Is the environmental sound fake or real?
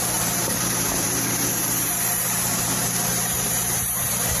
fake